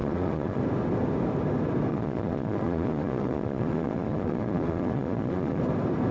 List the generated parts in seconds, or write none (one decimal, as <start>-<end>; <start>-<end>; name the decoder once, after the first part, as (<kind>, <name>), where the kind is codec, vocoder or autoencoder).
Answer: 0.0-0.6 (vocoder, Vocos); 1.9-5.6